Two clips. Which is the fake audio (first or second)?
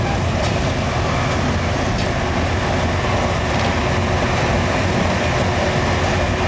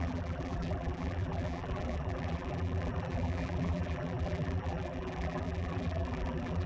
second